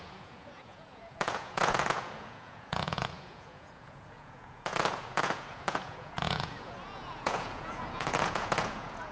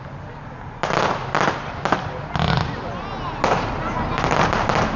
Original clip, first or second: second